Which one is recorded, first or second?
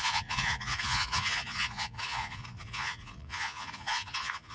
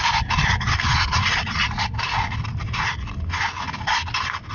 second